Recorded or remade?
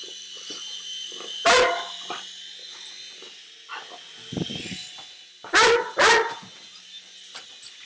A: recorded